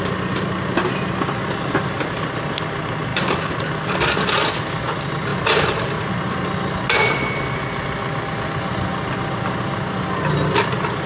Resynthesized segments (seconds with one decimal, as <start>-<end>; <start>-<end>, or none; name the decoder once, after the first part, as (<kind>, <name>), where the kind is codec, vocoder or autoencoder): none